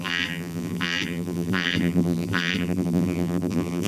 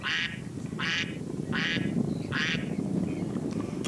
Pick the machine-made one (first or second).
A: first